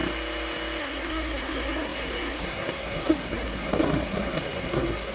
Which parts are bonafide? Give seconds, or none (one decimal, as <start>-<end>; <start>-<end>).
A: 0.0-0.8